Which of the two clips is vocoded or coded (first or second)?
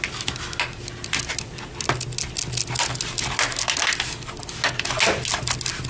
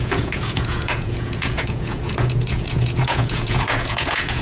second